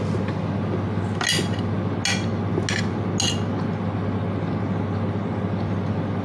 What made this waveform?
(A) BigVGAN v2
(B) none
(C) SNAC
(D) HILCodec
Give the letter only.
B